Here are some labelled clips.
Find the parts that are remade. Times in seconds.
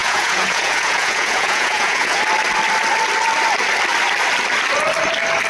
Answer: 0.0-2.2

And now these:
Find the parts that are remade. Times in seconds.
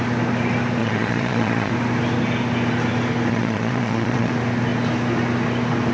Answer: 0.8-1.7; 3.3-4.3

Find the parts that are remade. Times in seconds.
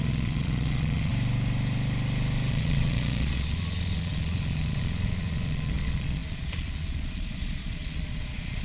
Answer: 0.0-1.1; 2.5-8.6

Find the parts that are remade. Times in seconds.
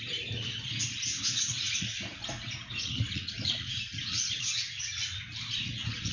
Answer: 1.1-4.8; 5.6-6.1